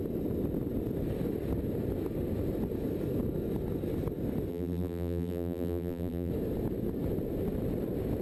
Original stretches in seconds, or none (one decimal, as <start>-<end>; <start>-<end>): 0.0-4.5; 6.3-8.2